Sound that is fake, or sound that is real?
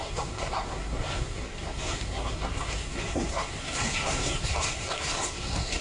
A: fake